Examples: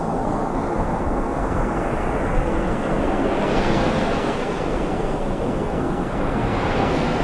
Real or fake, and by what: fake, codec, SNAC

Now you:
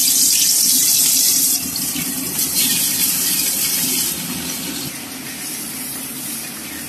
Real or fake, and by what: real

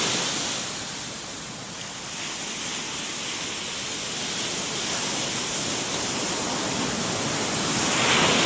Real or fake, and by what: real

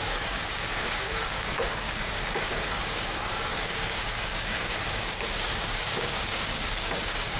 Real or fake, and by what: fake, codec, DAC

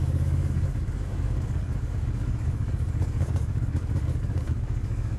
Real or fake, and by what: fake, codec, DAC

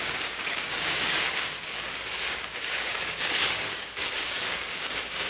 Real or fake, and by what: fake, codec, DAC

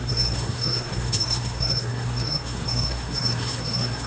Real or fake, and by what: fake, codec, SNAC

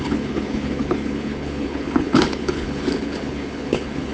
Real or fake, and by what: fake, codec, HILCodec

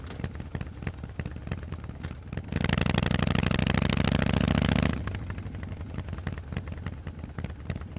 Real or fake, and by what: real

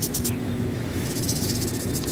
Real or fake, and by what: fake, autoencoder, DAC-VAE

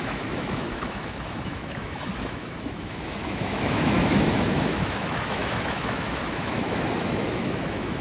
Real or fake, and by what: fake, autoencoder, DAC-VAE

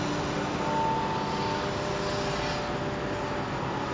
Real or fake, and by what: real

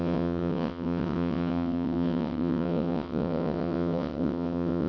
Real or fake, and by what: fake, vocoder, WaveNeXt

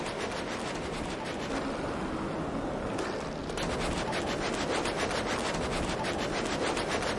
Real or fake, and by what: real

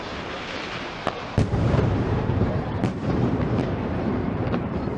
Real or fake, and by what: fake, vocoder, BigVGAN v2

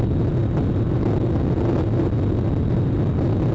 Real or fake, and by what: real